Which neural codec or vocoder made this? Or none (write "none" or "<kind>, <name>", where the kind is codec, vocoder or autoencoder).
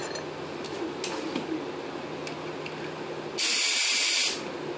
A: none